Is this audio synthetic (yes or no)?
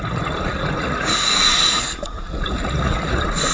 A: yes